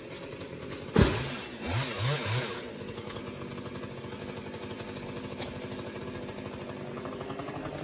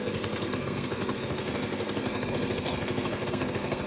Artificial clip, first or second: second